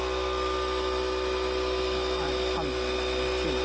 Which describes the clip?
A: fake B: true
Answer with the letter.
B